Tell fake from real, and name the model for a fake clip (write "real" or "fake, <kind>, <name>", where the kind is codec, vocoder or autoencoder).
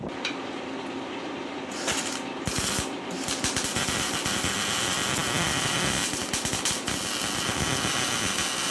real